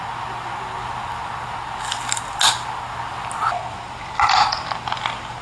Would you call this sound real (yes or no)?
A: yes